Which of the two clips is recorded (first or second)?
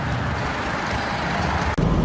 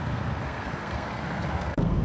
first